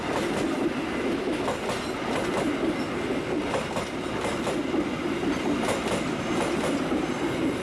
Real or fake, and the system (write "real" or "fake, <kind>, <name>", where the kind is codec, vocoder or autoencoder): real